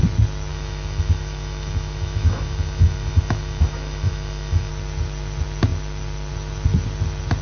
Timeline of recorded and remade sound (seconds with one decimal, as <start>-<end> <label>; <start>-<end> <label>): 0.0-0.5 recorded; 0.5-4.7 remade; 4.7-7.4 recorded